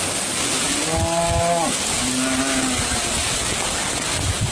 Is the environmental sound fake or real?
real